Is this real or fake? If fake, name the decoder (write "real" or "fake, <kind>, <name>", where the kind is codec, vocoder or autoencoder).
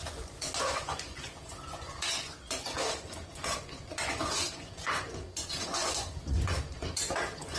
fake, vocoder, Vocos